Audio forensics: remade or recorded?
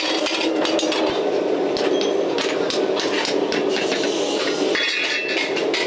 recorded